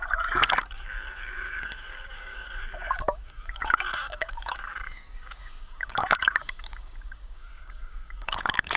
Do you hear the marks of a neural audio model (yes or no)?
yes